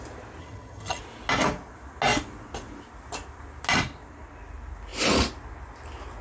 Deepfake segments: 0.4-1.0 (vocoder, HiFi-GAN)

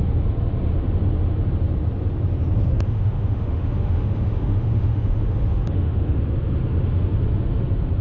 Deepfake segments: 2.7-6.2 (autoencoder, DAC-VAE)